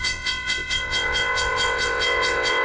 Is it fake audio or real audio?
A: fake